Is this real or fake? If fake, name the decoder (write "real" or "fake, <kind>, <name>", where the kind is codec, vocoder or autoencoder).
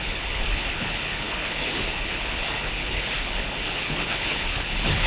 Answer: fake, codec, HILCodec